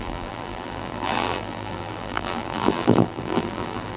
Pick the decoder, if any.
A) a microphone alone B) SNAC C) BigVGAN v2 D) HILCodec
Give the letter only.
C